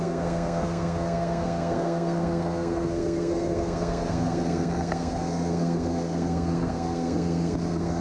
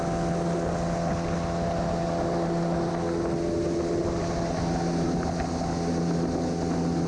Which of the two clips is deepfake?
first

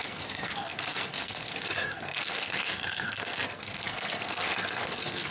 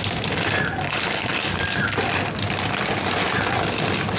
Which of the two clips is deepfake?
first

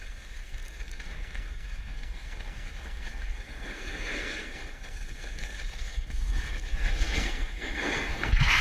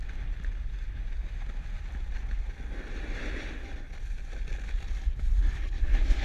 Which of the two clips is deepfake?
first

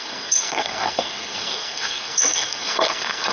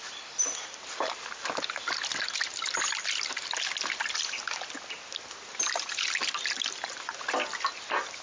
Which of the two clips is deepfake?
first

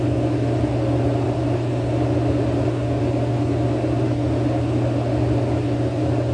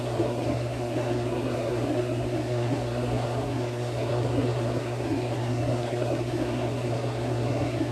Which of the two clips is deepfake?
second